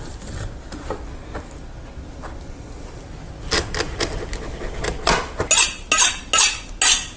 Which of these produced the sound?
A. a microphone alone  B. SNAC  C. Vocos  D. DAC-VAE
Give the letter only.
A